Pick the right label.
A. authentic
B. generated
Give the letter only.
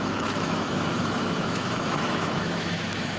B